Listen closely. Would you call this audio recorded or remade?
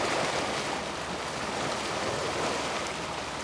recorded